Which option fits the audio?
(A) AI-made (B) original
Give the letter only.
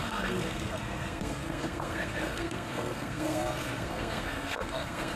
A